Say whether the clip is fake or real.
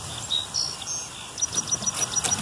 real